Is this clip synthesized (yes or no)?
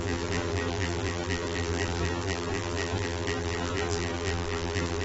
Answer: yes